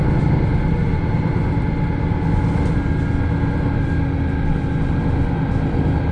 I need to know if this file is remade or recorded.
recorded